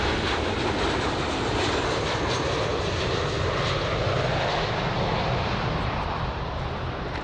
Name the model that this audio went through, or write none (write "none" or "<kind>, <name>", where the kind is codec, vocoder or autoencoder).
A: none